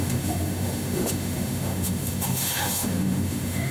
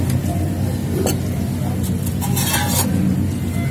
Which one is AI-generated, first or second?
first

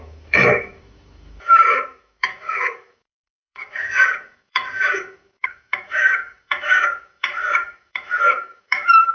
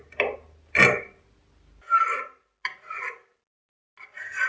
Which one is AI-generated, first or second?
first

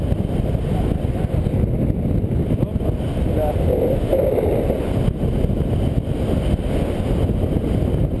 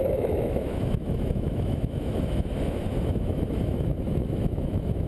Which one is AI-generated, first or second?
second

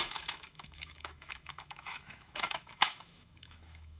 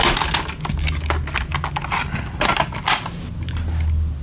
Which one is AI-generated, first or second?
first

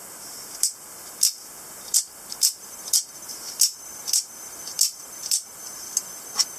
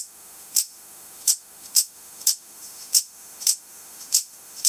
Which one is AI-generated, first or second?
second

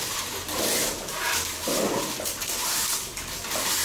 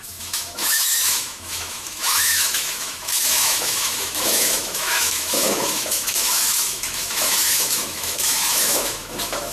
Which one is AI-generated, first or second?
second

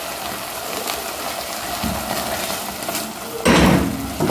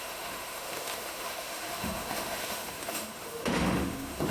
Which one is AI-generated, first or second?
second